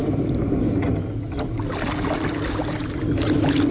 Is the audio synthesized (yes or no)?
no